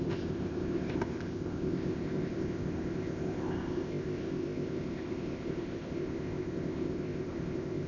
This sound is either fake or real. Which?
fake